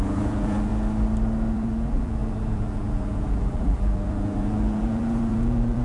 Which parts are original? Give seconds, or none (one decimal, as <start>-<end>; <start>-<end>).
0.7-1.5